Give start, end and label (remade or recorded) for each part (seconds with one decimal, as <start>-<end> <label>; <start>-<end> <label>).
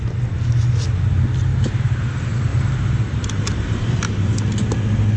0.0-1.5 recorded; 1.5-2.0 remade; 2.0-2.5 recorded; 2.5-4.3 remade; 4.3-5.2 recorded